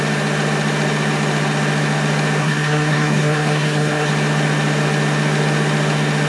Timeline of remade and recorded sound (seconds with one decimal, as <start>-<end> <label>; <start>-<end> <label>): 0.0-2.4 recorded; 2.4-4.1 remade; 4.1-6.3 recorded

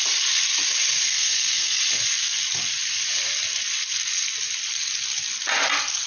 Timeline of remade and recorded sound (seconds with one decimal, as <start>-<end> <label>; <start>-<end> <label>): 0.0-1.1 recorded; 1.1-1.8 remade; 1.8-6.1 recorded

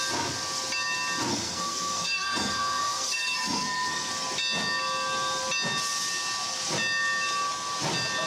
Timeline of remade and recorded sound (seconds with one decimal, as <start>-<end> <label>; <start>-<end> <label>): 0.0-1.3 recorded; 1.3-4.1 remade; 4.1-8.3 recorded

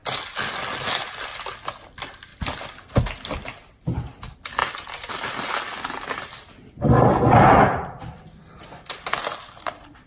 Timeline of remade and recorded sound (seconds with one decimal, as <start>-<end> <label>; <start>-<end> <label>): 0.0-10.1 recorded

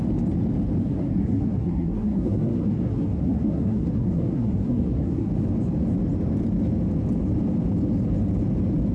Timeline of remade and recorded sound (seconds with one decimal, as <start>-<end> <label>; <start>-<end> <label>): 0.0-0.8 recorded; 0.8-5.3 remade; 5.3-8.9 recorded

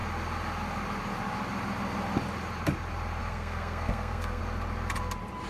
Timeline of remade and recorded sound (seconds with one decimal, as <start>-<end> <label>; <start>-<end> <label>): 0.0-3.2 recorded; 3.2-4.4 remade; 4.4-5.5 recorded

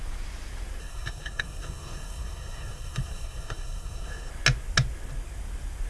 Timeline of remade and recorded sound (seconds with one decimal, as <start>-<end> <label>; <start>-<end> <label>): 0.0-0.8 recorded; 0.8-4.3 remade; 4.3-5.9 recorded

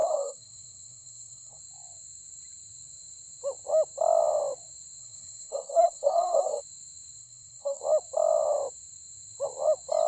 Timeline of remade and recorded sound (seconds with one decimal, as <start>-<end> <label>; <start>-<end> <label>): 0.0-1.6 remade; 1.6-5.0 recorded; 5.0-6.6 remade; 6.6-7.2 recorded; 7.2-7.8 remade; 7.8-10.1 recorded